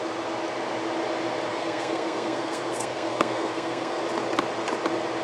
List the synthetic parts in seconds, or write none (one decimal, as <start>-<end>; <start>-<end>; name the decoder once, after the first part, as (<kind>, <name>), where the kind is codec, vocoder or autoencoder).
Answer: 1.5-4.0 (codec, SNAC)